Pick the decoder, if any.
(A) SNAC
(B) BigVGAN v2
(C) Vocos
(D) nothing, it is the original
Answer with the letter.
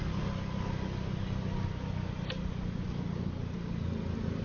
D